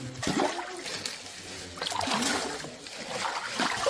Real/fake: real